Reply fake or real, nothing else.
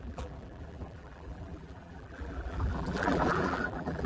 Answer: fake